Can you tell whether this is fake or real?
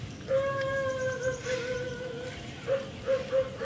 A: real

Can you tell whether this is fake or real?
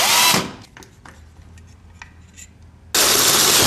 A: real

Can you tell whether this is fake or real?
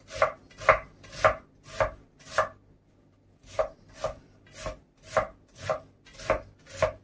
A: real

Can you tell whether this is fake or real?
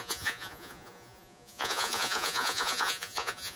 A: fake